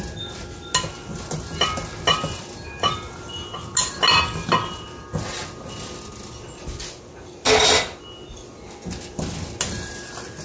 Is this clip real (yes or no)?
yes